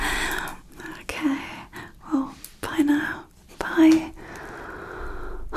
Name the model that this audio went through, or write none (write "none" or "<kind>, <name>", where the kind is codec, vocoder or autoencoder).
none